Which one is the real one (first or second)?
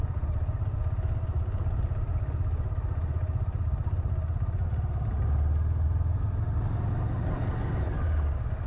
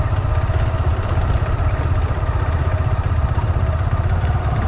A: first